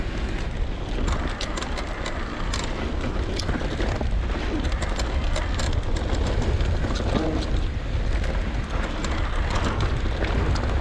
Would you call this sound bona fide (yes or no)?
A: yes